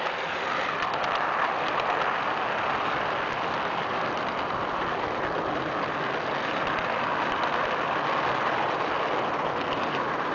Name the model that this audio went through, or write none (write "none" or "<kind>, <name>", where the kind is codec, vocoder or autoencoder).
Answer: none